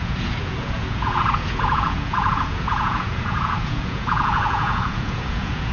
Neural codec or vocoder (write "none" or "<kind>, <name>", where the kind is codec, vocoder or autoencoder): vocoder, Vocos